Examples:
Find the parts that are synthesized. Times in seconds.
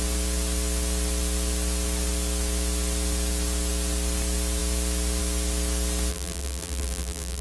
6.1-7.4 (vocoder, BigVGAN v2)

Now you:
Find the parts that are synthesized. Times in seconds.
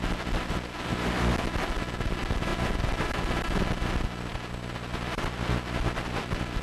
4.3-6.6 (vocoder, BigVGAN v2)